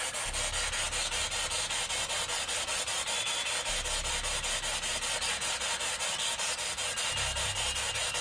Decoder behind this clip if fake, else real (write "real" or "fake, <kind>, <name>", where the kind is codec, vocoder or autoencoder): real